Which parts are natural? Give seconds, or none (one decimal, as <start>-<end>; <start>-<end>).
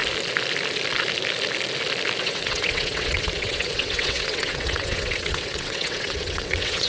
0.0-2.2